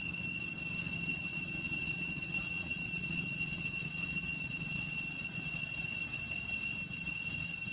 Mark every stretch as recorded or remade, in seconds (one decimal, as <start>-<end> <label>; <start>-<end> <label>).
0.0-1.1 recorded; 1.1-5.5 remade; 5.5-7.7 recorded

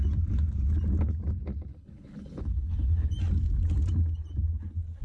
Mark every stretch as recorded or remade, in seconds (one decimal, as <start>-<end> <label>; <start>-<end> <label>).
0.0-1.7 recorded; 1.7-3.1 remade; 3.1-5.0 recorded

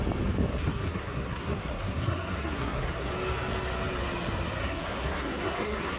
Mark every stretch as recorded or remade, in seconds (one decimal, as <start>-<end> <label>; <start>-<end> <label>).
0.0-0.5 recorded; 0.5-3.1 remade; 3.1-4.6 recorded; 4.6-6.0 remade

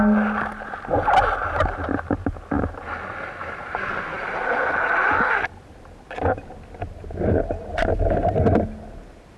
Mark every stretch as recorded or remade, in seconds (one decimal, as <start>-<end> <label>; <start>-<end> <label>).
0.0-3.4 recorded; 3.4-4.7 remade; 4.7-7.7 recorded; 7.7-8.4 remade; 8.4-9.4 recorded

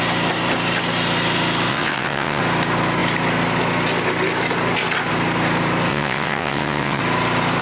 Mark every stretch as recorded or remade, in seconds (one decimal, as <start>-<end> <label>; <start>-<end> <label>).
0.0-1.7 recorded; 1.7-2.4 remade; 2.4-5.9 recorded; 5.9-7.0 remade; 7.0-7.6 recorded

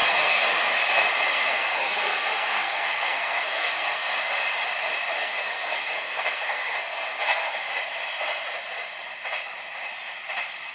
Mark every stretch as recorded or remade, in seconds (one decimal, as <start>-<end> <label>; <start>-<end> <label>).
0.0-0.6 remade; 0.6-1.3 recorded; 1.3-4.1 remade; 4.1-5.2 recorded; 5.2-7.6 remade; 7.6-10.7 recorded